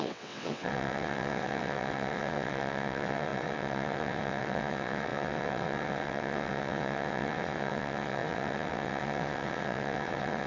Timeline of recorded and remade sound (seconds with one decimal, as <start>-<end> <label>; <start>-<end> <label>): 0.0-10.5 remade